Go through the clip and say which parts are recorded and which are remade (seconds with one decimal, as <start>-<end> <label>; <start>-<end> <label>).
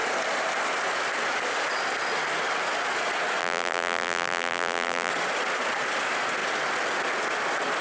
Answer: 0.0-3.4 recorded; 3.4-5.1 remade; 5.1-7.8 recorded